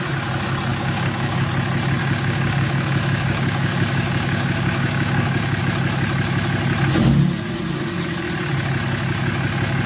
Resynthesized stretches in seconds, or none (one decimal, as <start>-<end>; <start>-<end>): 0.7-1.5; 2.0-5.6